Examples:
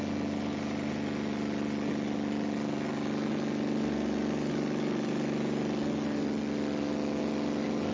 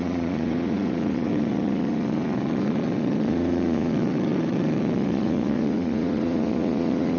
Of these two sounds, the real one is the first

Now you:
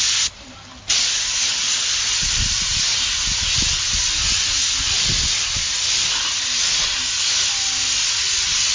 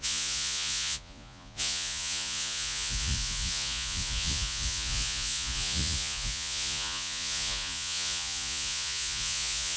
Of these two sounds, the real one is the first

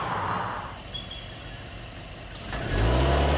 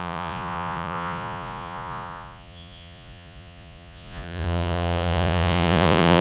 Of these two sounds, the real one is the first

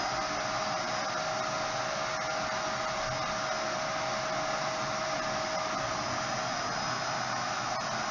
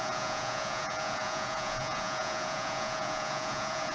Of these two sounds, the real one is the first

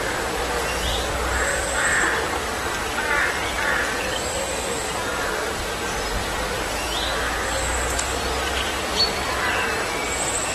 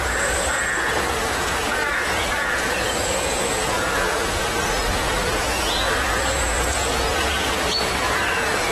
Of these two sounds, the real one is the first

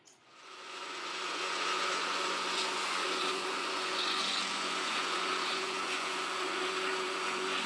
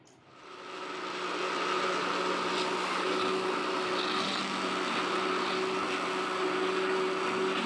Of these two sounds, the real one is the second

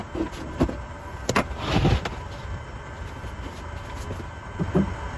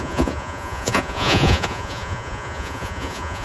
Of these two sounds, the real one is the first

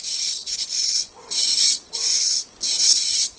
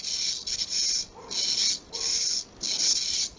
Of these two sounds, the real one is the second